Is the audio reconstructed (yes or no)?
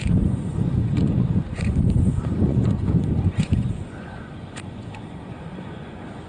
yes